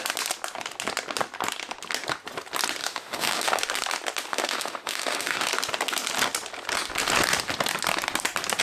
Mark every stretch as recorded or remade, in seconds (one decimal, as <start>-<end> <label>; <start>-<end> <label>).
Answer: 0.0-2.8 recorded; 2.8-3.6 remade; 3.6-4.3 recorded; 4.3-5.5 remade; 5.5-8.6 recorded